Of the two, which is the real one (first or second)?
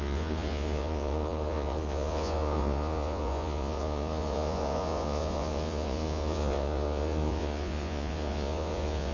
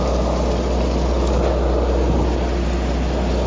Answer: second